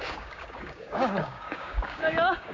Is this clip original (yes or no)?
no